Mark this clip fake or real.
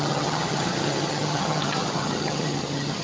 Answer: fake